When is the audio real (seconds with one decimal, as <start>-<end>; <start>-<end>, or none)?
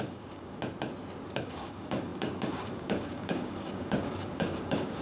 0.6-1.4